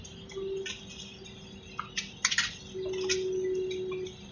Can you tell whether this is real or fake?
real